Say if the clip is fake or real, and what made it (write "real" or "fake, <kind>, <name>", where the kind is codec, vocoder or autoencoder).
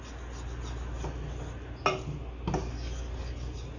real